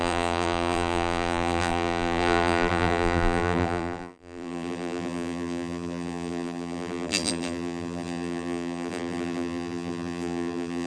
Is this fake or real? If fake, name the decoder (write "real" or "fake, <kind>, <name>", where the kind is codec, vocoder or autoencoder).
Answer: fake, vocoder, BigVGAN v2